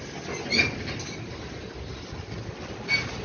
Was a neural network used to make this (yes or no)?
no